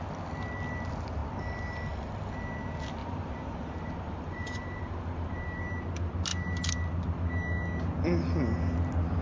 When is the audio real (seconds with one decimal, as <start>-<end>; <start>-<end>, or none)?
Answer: 0.0-3.0; 5.6-9.2